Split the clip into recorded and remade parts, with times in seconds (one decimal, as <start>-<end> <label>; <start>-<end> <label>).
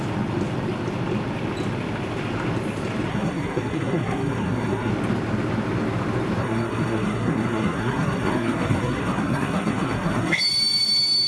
0.0-3.1 recorded; 3.1-4.9 remade; 4.9-6.4 recorded; 6.4-10.4 remade; 10.4-11.3 recorded